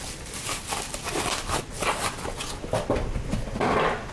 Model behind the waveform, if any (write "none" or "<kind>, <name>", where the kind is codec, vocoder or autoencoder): none